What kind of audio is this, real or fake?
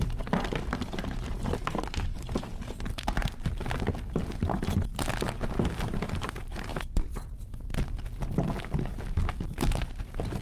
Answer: real